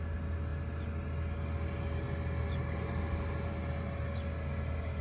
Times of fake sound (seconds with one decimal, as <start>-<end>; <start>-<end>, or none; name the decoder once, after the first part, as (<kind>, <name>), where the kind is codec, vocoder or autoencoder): none